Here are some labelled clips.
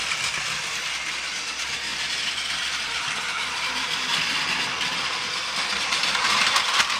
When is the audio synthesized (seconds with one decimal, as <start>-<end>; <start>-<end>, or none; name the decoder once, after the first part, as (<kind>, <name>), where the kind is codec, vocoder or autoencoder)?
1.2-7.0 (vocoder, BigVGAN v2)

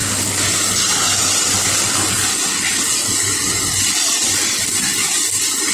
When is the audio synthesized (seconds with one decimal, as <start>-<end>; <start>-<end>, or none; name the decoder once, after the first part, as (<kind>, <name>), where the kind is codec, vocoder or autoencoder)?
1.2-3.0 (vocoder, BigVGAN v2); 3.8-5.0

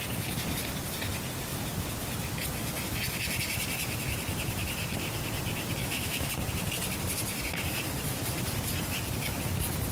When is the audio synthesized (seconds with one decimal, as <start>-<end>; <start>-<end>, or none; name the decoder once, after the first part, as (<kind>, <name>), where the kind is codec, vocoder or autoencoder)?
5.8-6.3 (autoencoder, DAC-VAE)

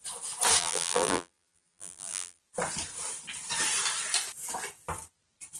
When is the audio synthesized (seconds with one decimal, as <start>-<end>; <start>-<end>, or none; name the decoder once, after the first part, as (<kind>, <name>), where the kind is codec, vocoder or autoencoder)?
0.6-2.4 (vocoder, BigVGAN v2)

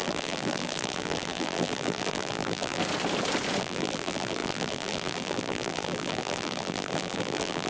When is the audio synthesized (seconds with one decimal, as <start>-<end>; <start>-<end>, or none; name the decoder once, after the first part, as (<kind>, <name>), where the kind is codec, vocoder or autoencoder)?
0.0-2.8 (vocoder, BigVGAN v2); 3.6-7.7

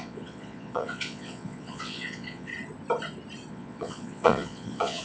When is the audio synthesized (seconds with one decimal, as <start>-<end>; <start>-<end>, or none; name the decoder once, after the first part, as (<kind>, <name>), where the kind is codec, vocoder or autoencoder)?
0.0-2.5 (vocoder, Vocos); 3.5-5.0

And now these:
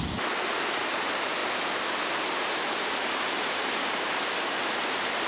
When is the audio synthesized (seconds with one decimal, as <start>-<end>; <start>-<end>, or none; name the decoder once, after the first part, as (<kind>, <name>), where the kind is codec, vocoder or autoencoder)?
none

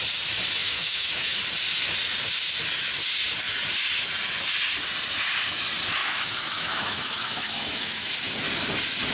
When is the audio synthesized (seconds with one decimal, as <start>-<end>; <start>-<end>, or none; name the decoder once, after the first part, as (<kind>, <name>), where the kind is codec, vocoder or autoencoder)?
0.6-1.4 (autoencoder, DAC-VAE); 6.0-8.1